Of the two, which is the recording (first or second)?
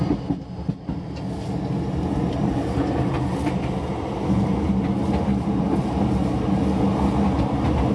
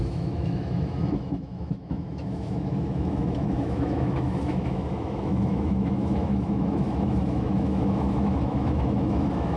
first